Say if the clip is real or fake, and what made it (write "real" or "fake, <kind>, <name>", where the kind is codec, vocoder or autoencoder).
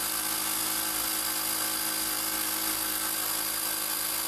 real